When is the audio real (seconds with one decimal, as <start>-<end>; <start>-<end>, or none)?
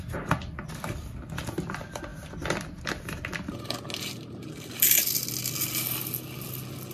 0.0-6.9